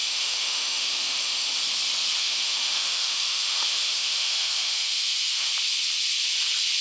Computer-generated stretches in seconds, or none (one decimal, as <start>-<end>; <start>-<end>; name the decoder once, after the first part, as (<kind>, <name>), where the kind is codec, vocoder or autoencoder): 0.0-1.5 (autoencoder, DAC-VAE); 2.2-5.5